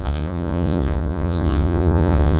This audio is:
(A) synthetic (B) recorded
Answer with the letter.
A